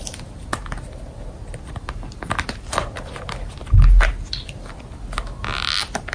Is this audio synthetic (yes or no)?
no